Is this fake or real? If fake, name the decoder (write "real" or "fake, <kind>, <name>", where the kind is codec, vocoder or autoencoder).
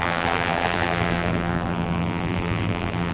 fake, vocoder, BigVGAN v2